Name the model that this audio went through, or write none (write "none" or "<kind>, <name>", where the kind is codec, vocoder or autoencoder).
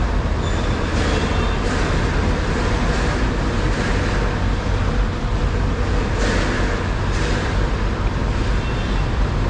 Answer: none